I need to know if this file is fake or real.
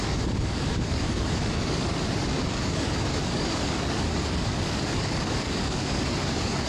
fake